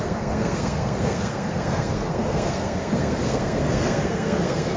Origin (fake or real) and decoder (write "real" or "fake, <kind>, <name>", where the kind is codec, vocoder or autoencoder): fake, codec, SNAC